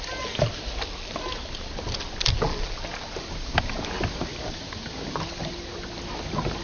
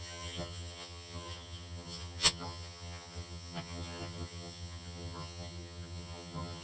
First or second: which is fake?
second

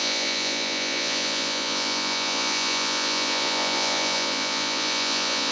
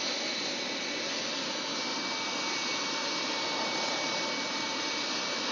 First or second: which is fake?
first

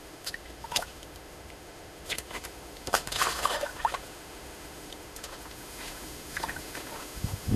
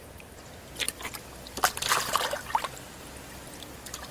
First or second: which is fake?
first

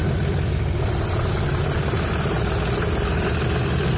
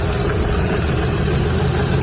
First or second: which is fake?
second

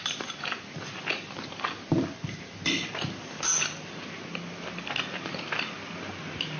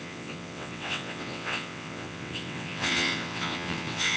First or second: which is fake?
second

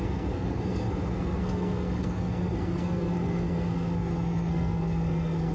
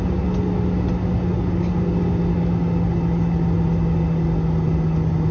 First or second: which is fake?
first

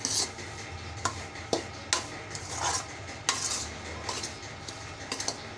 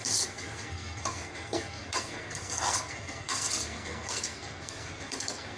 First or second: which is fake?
second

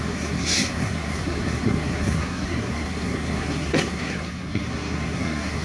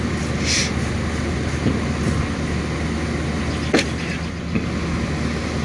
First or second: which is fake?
first